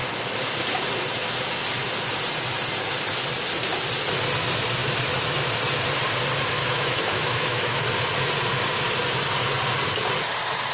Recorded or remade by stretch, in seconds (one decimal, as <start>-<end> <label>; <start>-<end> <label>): 0.0-6.6 recorded; 6.6-7.8 remade; 7.8-10.7 recorded